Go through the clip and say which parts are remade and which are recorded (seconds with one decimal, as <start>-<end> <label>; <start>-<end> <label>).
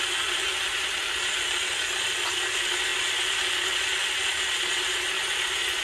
0.0-5.8 recorded